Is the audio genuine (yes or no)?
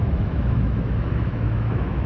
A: no